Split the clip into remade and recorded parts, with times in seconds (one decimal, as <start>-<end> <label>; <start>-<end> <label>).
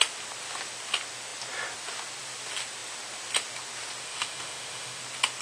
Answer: 0.0-4.0 recorded; 4.0-5.0 remade; 5.0-5.4 recorded